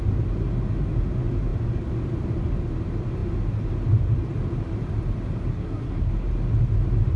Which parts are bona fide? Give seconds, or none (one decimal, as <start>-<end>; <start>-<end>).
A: 0.0-5.5; 6.1-7.2